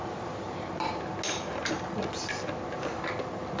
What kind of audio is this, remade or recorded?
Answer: recorded